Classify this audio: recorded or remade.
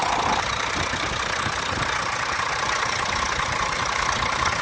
remade